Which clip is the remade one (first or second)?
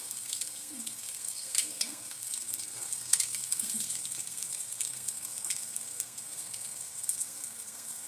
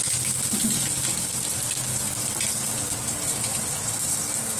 first